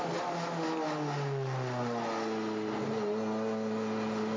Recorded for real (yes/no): yes